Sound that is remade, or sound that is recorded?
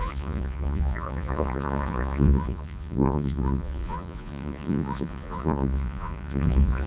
remade